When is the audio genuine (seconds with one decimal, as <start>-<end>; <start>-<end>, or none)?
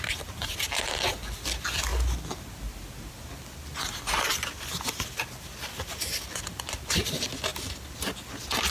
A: 0.0-8.7